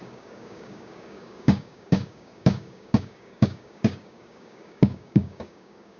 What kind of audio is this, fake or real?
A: fake